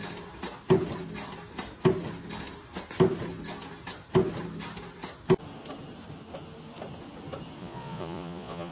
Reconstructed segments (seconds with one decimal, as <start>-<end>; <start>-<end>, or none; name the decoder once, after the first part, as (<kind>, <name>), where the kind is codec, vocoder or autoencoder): 7.6-8.7 (vocoder, Vocos)